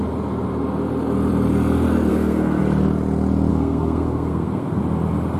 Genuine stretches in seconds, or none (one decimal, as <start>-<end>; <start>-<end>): 0.0-2.1; 2.6-3.5; 4.8-5.4